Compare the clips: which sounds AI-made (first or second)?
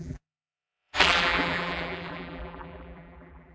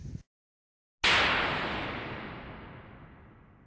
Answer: first